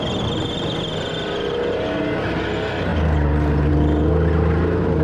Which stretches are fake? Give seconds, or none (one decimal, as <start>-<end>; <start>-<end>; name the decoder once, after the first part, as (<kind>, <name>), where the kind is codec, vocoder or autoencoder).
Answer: none